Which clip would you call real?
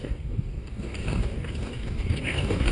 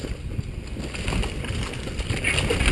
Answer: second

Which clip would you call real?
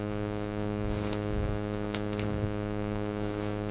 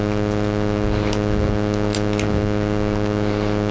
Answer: second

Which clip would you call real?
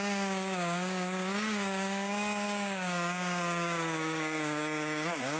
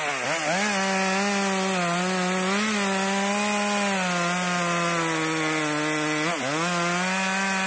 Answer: second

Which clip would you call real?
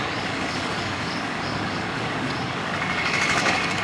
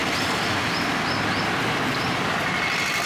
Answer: second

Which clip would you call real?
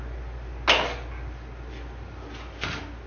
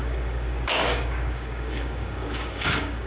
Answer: first